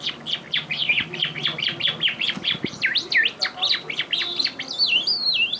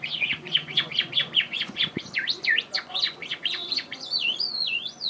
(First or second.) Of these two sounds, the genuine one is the first